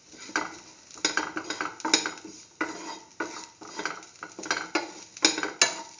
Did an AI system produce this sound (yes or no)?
no